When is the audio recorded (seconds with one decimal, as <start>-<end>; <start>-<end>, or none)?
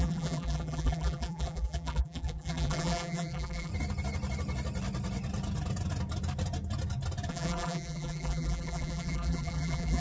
3.7-7.3